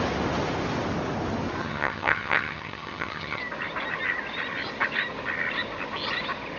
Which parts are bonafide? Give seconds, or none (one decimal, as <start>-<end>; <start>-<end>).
0.0-1.6; 3.4-6.6